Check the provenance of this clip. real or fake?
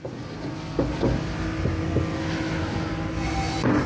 real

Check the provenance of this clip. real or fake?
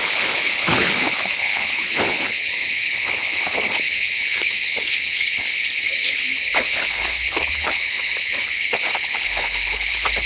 fake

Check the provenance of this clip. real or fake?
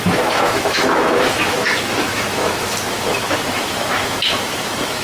fake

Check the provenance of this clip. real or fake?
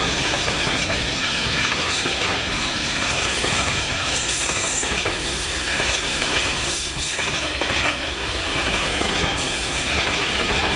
fake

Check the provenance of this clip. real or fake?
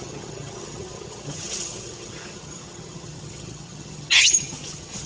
fake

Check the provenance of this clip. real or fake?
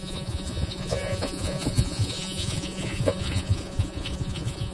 fake